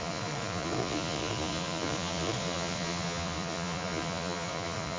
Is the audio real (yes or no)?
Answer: no